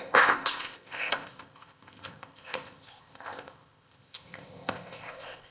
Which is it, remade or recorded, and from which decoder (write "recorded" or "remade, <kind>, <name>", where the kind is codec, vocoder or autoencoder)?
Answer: remade, codec, ZipCodec